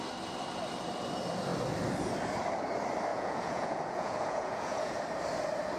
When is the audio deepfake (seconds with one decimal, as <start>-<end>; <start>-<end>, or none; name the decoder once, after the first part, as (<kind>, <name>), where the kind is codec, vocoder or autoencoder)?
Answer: 3.1-5.0 (vocoder, Vocos)